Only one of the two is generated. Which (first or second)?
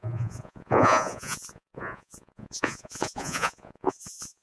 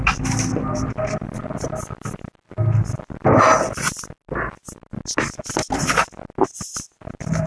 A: first